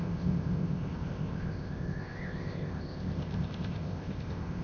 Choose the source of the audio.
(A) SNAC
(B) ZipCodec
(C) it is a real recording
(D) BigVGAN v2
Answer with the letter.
B